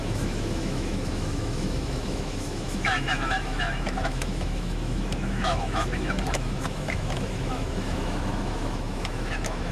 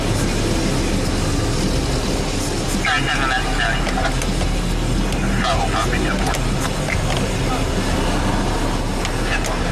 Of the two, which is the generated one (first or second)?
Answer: first